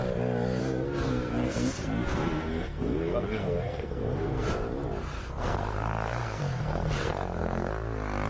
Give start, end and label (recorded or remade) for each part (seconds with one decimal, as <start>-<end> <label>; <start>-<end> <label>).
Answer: 0.0-0.6 recorded; 0.6-4.5 remade; 4.5-5.2 recorded; 5.2-7.7 remade; 7.7-8.3 recorded